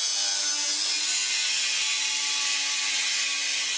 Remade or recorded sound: recorded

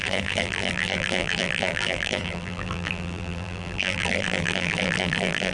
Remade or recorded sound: remade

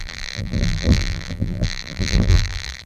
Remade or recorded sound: remade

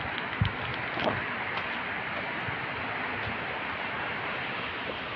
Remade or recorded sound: recorded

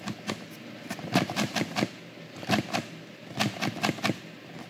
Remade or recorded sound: recorded